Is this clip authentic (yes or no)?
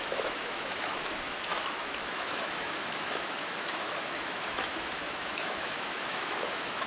no